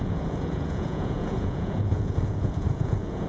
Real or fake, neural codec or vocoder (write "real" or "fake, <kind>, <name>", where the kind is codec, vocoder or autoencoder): fake, vocoder, Vocos